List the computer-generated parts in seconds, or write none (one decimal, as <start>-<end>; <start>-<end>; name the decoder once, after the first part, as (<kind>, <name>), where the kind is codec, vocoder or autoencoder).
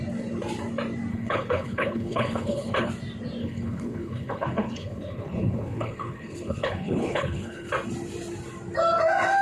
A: 1.1-2.9 (codec, HILCodec); 3.4-7.7